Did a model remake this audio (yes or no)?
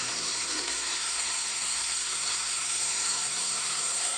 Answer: yes